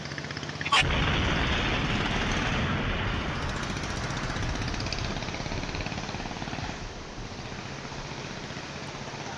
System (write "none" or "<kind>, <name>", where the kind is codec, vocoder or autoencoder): none